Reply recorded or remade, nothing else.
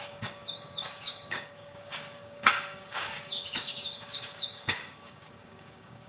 remade